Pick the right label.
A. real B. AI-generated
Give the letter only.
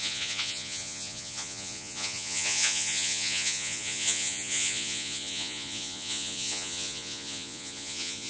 B